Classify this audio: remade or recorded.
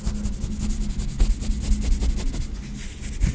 recorded